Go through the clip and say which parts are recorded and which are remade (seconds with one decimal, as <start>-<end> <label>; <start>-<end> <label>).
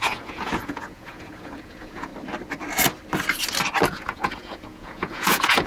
0.0-2.1 remade; 2.1-3.9 recorded; 3.9-5.7 remade